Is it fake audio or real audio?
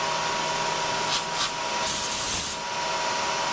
real